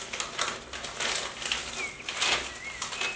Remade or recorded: recorded